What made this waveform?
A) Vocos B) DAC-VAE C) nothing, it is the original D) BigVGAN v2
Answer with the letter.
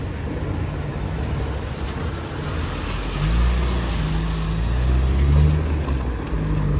C